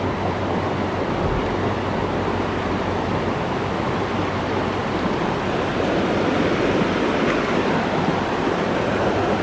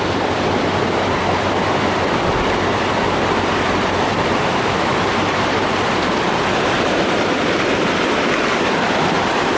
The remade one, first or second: second